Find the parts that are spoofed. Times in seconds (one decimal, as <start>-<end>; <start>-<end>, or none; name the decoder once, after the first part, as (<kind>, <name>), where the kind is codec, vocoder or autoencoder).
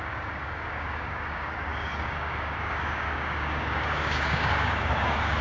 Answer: 0.0-5.4 (codec, DAC)